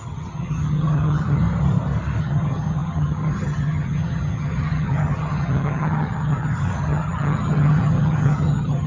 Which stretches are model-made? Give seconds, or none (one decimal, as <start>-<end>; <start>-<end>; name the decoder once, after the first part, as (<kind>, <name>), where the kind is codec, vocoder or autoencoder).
0.0-1.4 (vocoder, HiFi-GAN); 2.2-8.9